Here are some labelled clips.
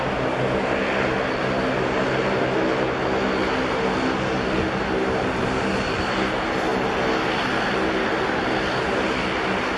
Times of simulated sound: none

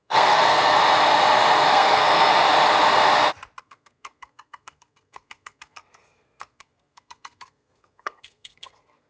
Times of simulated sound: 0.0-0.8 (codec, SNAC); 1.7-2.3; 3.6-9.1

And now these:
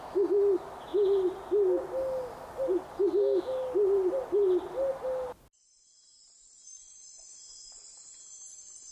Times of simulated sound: none

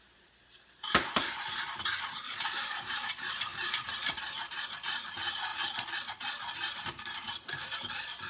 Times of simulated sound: 0.0-5.5 (vocoder, BigVGAN v2); 6.8-8.3

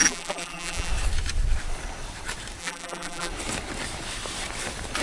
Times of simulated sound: 0.0-0.9 (vocoder, BigVGAN v2); 2.6-3.3

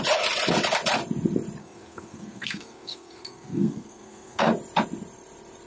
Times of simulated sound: 1.6-4.5 (codec, SNAC)